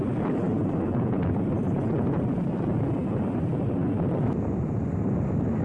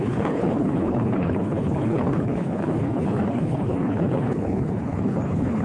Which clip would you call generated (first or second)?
second